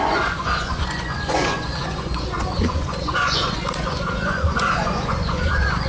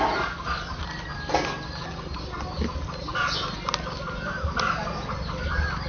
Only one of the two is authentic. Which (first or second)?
second